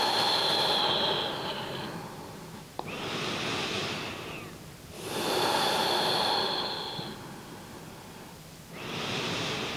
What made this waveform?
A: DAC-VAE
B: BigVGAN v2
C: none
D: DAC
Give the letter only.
C